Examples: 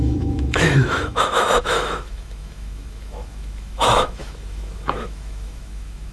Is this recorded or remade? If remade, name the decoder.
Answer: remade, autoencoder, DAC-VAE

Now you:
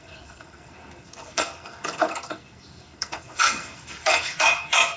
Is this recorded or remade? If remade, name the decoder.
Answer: remade, codec, SNAC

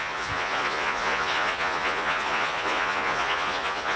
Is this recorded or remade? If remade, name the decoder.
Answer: remade, vocoder, Vocos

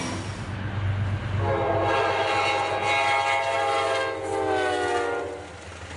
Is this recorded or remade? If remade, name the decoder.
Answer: recorded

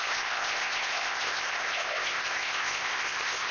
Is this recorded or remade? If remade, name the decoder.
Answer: remade, codec, ZipCodec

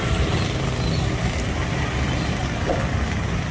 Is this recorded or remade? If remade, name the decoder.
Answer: recorded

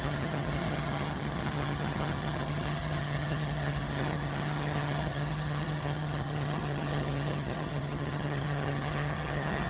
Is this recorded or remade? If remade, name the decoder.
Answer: remade, vocoder, HiFi-GAN